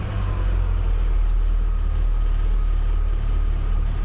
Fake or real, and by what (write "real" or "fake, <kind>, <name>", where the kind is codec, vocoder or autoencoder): real